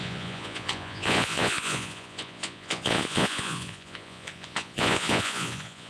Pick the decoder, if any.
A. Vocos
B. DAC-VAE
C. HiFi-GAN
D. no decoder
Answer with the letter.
A